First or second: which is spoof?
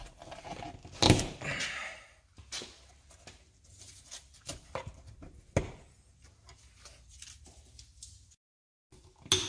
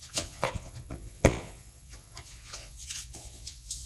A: second